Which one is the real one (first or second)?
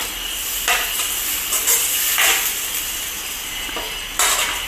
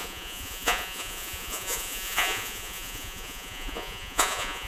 first